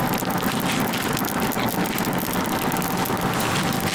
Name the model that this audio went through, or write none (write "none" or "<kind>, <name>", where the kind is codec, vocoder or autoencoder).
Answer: none